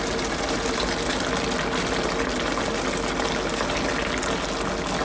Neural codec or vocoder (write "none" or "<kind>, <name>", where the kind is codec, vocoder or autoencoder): none